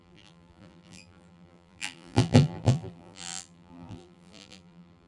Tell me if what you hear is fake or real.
fake